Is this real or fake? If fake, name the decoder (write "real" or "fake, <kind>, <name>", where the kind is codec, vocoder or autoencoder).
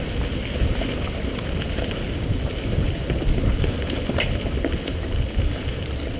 real